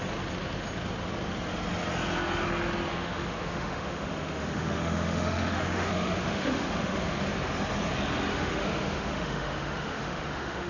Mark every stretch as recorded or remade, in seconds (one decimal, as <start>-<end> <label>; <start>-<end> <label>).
0.0-2.9 recorded; 2.9-7.2 remade; 7.2-8.3 recorded; 8.3-10.7 remade